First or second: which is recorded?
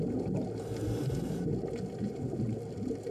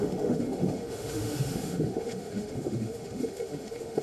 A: first